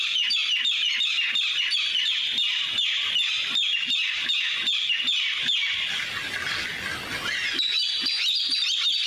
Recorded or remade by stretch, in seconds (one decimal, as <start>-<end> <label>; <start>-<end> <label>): 0.0-9.1 recorded